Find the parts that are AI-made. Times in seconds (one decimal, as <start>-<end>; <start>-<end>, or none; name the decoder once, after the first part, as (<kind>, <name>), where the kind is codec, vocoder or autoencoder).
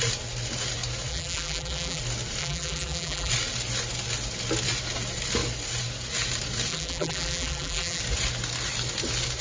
1.1-2.0 (vocoder, BigVGAN v2); 2.4-3.3; 6.7-8.0